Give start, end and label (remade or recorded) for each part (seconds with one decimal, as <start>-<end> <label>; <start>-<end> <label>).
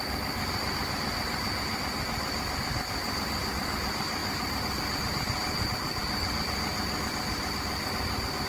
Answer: 0.0-8.5 recorded